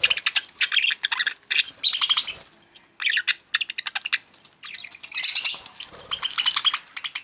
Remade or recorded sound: recorded